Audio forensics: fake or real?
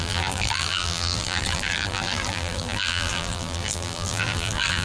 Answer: fake